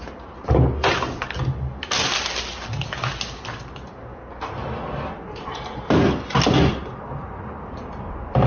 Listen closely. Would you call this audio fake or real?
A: real